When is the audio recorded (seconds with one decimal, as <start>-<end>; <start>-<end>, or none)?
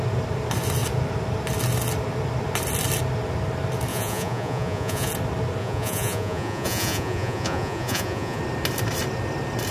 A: 0.0-3.9; 5.1-5.6; 8.4-9.7